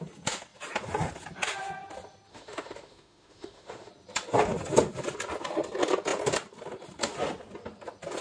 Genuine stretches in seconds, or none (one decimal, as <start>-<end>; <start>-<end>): 0.0-2.3; 3.9-8.2